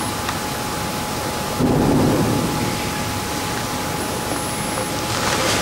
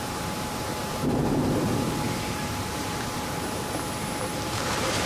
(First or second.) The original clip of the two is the first